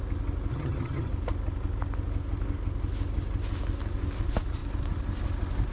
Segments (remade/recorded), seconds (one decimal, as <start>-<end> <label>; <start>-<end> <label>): 0.0-0.5 recorded; 0.5-1.1 remade; 1.1-5.7 recorded

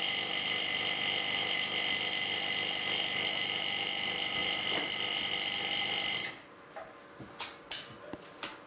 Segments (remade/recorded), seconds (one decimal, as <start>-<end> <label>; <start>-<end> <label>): 0.0-8.7 recorded

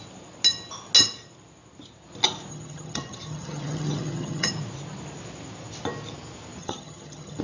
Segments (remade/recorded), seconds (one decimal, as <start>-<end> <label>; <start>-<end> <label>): 0.0-2.5 recorded; 2.5-4.5 remade; 4.5-6.6 recorded; 6.6-7.4 remade

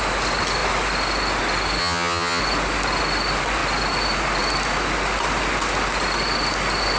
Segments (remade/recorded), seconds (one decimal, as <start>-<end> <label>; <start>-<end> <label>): 0.0-1.8 recorded; 1.8-2.4 remade; 2.4-7.0 recorded